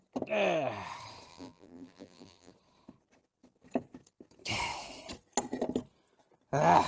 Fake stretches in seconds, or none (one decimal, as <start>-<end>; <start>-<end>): 1.3-2.5